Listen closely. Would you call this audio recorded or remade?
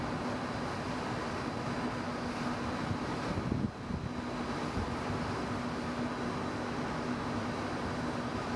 recorded